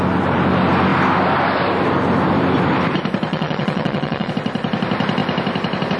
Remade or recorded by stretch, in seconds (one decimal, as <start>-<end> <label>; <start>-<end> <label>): 0.0-3.3 recorded; 3.3-4.3 remade; 4.3-6.0 recorded